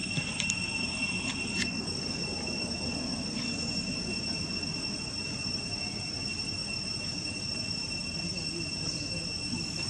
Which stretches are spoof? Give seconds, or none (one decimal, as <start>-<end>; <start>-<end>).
none